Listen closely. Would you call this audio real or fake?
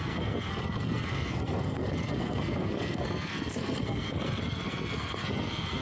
fake